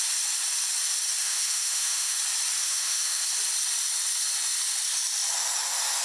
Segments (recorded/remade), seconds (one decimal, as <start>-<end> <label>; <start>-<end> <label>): 0.0-1.2 recorded; 1.2-2.2 remade; 2.2-2.6 recorded; 2.6-3.2 remade; 3.2-6.0 recorded